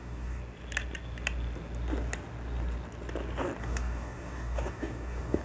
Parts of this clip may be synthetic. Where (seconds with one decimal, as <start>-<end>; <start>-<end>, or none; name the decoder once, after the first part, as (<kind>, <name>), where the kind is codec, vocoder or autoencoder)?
0.0-0.4 (codec, DAC); 3.6-5.4